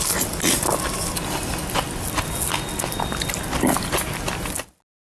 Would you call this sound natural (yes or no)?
yes